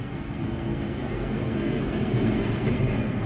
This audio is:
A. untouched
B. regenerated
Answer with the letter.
B